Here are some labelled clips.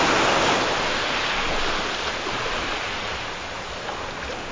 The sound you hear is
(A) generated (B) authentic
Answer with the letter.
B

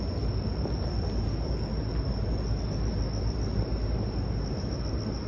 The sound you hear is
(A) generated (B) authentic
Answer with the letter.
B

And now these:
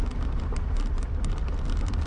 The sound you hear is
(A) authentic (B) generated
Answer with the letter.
A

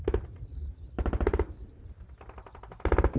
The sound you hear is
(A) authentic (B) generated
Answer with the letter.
A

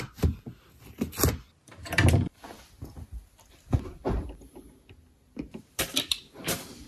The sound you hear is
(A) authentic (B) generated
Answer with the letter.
A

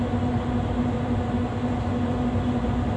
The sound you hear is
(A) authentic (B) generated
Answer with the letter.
A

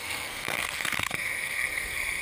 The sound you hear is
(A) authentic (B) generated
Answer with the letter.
B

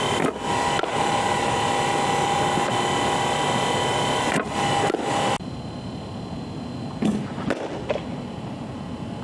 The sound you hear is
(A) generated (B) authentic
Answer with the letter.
B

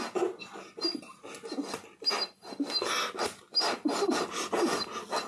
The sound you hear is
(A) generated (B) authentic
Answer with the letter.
B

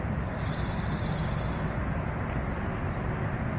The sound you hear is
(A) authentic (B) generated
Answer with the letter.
A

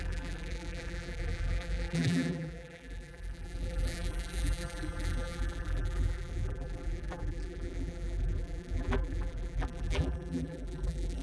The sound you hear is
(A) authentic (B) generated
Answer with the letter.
B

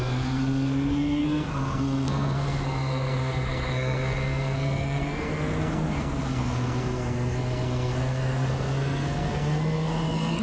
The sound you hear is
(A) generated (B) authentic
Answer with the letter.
A